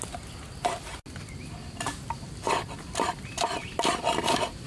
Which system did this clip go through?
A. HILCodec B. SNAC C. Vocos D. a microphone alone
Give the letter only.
D